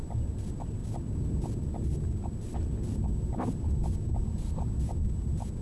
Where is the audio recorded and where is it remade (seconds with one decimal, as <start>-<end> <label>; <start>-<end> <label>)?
0.0-5.6 recorded